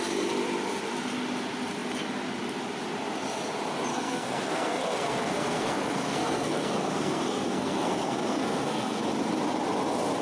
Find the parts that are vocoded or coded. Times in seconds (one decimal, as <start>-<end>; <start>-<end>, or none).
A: 3.9-9.0